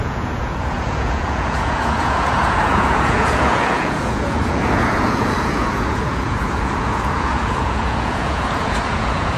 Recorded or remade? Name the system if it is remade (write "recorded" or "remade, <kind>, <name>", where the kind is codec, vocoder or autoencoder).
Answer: remade, vocoder, Vocos